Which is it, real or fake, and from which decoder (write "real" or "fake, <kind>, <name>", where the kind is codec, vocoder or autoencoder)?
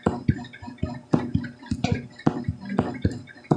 real